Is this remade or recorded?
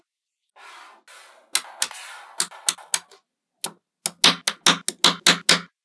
recorded